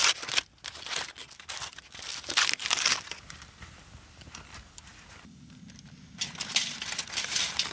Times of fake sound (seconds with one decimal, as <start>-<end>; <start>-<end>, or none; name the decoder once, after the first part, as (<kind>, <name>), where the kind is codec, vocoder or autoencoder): none

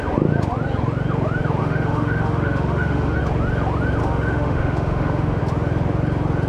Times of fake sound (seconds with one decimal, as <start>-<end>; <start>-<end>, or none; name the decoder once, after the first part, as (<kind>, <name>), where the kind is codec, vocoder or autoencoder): 1.6-3.2 (autoencoder, DAC-VAE); 4.0-5.4

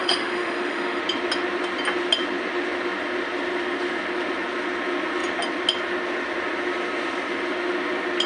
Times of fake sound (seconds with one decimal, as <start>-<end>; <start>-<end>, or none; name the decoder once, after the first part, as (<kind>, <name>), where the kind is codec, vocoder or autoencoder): 0.0-1.0 (autoencoder, DAC-VAE)

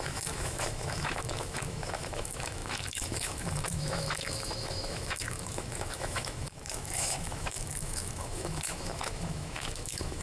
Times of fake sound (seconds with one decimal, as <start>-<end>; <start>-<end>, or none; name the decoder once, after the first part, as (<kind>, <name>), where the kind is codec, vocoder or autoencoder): 0.0-10.2 (autoencoder, DAC-VAE)

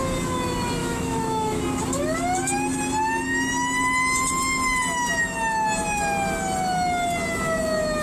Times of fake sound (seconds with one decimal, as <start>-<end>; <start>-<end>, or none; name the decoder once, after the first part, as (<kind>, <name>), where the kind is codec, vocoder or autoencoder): 0.8-1.6 (autoencoder, DAC-VAE)

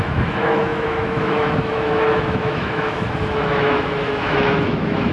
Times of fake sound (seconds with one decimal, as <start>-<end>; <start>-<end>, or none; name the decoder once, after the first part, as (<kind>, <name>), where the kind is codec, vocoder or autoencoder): 0.0-5.1 (autoencoder, DAC-VAE)

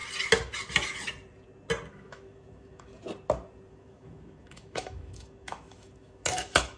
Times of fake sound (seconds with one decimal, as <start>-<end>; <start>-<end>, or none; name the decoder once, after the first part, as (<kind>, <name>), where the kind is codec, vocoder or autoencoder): 1.9-2.9 (autoencoder, DAC-VAE); 3.7-6.8

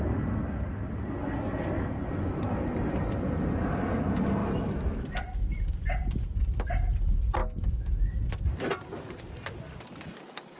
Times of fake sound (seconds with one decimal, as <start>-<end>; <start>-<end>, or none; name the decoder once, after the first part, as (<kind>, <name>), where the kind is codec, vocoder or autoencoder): 4.4-5.0 (autoencoder, DAC-VAE); 7.4-7.9